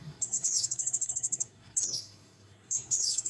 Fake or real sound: fake